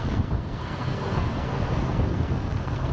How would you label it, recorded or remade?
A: remade